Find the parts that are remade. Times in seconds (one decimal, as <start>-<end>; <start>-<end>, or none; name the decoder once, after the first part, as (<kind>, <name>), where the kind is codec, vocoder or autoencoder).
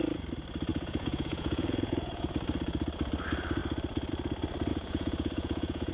0.7-2.3 (vocoder, Vocos); 4.7-5.9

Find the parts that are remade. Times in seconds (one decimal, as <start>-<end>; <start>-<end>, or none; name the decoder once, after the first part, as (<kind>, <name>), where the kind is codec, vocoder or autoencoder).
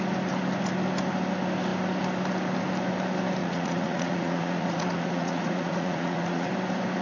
3.4-6.5 (vocoder, Vocos)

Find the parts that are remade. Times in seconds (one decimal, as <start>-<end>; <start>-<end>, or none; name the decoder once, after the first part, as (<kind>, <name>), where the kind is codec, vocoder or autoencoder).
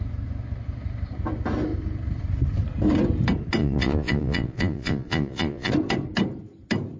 3.6-5.7 (vocoder, Vocos)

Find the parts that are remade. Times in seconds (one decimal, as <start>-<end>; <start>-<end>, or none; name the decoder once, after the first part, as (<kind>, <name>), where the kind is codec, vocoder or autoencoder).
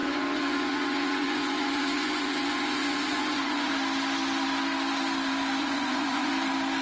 0.0-3.7 (vocoder, Vocos); 5.6-6.3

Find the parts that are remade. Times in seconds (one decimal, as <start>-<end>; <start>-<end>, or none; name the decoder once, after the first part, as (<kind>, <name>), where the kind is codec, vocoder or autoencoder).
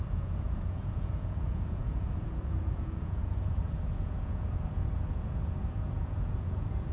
0.0-6.9 (vocoder, Vocos)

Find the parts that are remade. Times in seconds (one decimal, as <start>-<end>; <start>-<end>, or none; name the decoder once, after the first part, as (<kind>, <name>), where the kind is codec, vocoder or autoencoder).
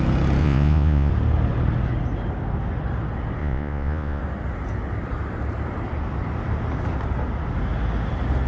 0.4-1.1 (vocoder, Vocos); 3.4-4.2